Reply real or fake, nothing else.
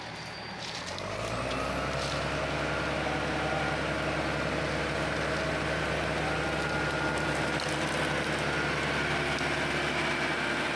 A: real